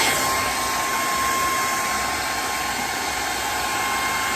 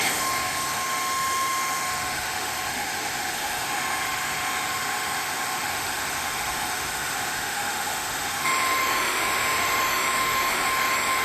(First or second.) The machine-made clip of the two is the second